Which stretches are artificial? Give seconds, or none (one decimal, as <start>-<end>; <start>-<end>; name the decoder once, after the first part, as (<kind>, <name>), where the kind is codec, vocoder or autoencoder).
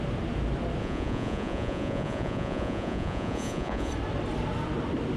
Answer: 0.8-3.9 (vocoder, Vocos)